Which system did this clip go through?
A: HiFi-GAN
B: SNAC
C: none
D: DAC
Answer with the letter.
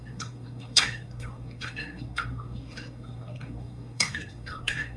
B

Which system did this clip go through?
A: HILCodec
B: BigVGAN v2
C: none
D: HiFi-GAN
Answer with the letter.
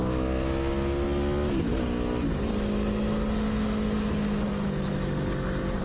C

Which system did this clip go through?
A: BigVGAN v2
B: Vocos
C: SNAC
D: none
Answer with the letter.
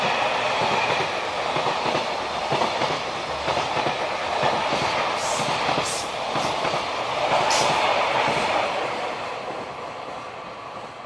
D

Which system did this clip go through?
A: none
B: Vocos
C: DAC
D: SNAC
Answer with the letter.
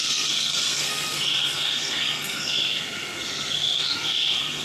D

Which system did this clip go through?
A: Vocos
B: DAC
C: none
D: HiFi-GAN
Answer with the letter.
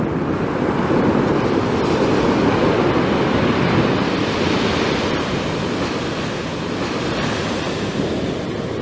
C